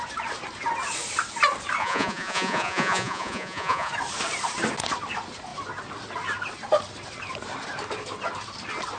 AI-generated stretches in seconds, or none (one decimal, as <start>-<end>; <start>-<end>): 1.8-3.9